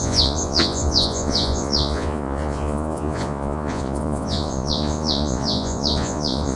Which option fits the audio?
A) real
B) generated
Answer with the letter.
B